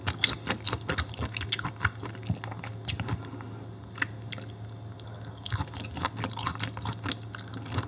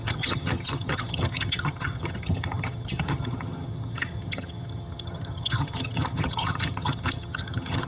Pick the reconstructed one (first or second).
second